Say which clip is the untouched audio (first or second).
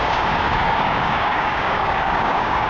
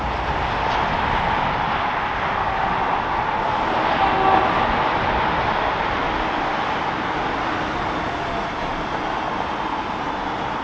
second